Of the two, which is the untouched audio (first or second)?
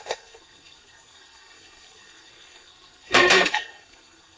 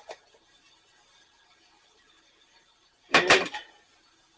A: second